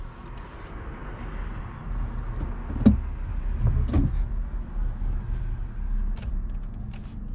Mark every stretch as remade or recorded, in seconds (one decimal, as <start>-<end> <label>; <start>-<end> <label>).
0.0-7.3 recorded